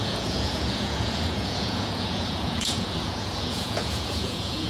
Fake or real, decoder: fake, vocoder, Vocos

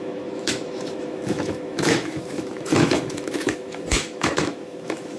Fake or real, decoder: fake, autoencoder, DAC-VAE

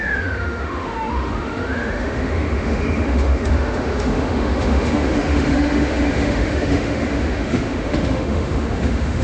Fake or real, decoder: fake, autoencoder, DAC-VAE